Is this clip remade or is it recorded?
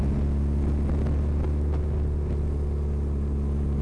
recorded